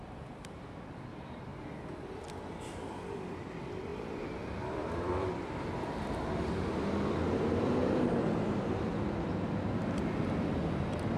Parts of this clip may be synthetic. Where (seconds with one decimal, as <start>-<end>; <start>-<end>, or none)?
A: 0.0-1.5; 2.5-7.8; 9.6-11.2